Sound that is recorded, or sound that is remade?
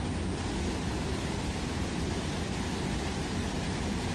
recorded